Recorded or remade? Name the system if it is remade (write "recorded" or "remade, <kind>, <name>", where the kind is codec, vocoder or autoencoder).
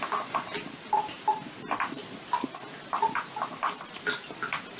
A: recorded